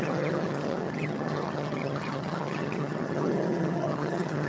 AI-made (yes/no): yes